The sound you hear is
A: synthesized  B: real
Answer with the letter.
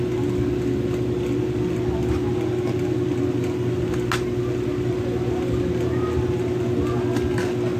B